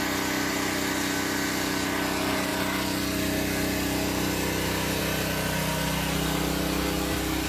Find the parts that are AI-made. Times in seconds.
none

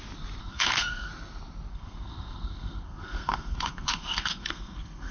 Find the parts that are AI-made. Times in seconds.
0.4-1.1 (codec, SNAC); 1.7-5.1

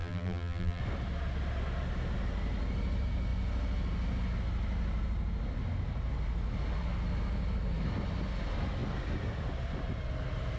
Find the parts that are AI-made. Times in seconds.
0.0-0.8 (vocoder, BigVGAN v2)

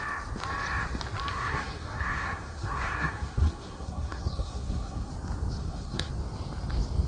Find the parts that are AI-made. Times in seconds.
1.3-5.1 (codec, SNAC); 5.6-6.1

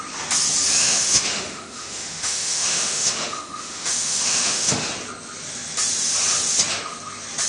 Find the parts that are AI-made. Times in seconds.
0.7-4.9 (autoencoder, DAC-VAE)

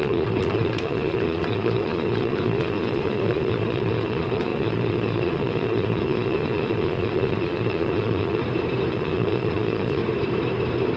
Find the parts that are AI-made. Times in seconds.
0.0-8.4 (vocoder, Vocos); 8.9-10.0